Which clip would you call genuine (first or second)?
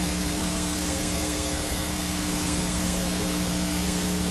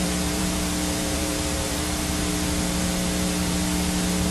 second